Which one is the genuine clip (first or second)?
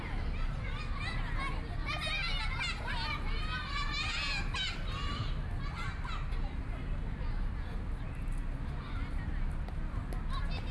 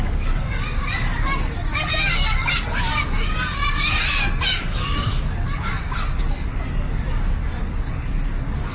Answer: first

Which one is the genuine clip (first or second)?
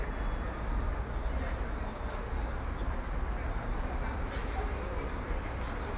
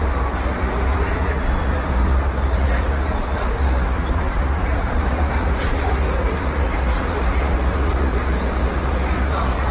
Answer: first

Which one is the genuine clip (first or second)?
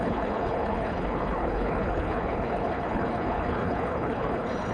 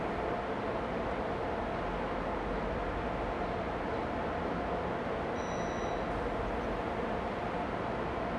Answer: second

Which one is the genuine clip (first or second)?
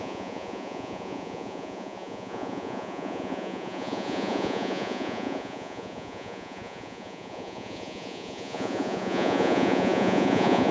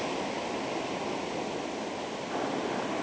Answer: second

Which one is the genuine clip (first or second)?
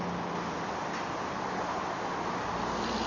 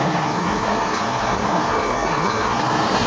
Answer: first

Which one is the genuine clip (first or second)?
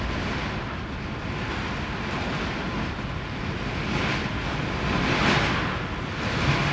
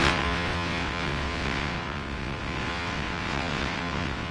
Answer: first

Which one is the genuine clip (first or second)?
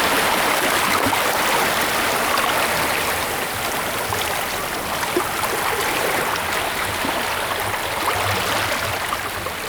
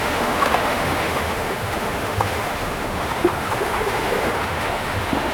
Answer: first